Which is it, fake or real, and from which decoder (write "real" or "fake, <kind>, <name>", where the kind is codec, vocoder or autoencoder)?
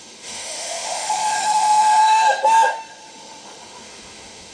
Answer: fake, autoencoder, DAC-VAE